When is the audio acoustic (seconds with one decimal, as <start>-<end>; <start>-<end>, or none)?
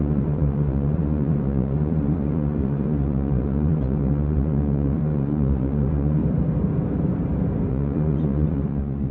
6.2-7.7